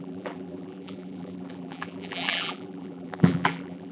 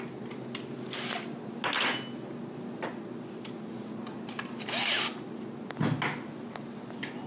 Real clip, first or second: second